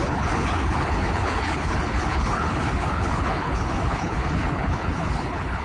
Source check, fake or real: fake